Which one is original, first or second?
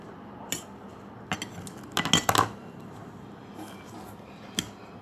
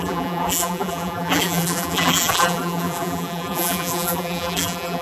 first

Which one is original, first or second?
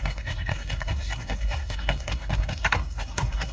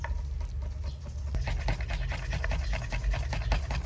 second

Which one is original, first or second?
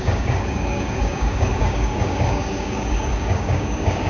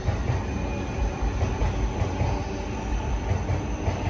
second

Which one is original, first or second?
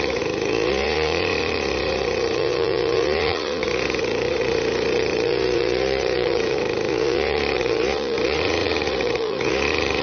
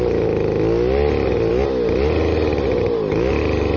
second